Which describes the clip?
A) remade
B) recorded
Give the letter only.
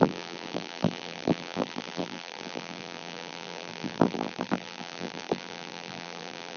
A